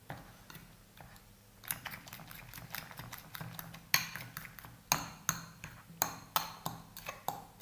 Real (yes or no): yes